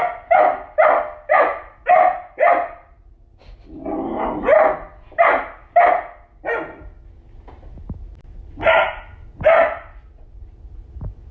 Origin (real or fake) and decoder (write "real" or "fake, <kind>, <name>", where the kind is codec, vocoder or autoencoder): real